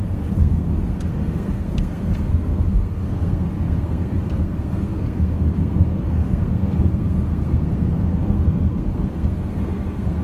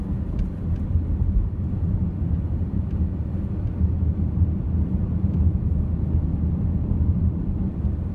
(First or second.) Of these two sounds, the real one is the second